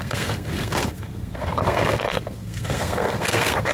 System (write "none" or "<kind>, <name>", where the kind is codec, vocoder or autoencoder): codec, SNAC